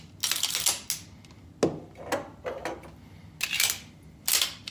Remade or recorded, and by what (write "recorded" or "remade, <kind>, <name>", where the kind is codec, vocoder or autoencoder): recorded